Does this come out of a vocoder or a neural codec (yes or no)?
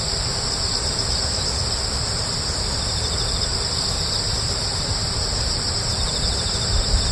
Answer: no